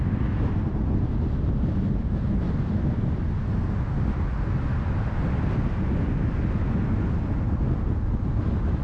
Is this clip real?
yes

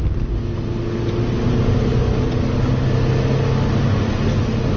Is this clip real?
yes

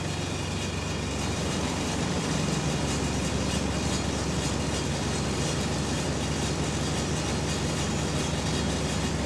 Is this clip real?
yes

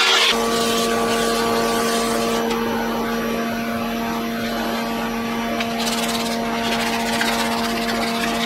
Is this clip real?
yes